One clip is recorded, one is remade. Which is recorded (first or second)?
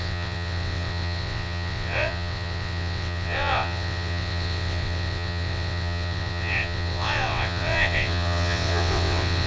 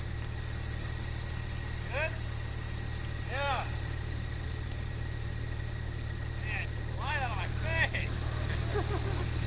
second